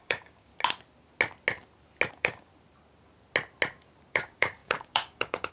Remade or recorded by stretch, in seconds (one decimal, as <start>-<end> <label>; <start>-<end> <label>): 0.0-0.5 remade; 0.5-2.1 recorded; 2.1-2.5 remade; 2.5-4.1 recorded; 4.1-5.5 remade